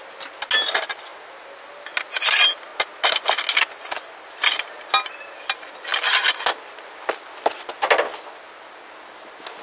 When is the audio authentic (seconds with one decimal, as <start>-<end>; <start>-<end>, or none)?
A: 0.0-9.6